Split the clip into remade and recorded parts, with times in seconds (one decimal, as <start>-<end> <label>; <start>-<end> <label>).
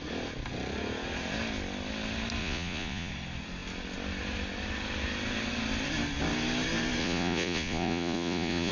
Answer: 0.0-2.4 recorded; 2.4-3.1 remade; 3.1-7.0 recorded; 7.0-8.7 remade